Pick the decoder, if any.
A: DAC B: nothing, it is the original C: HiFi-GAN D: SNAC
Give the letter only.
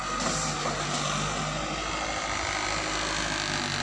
B